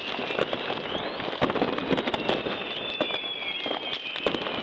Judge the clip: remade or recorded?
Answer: recorded